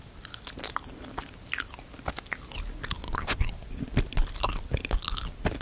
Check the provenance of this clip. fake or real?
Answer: real